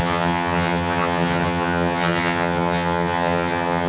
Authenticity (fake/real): fake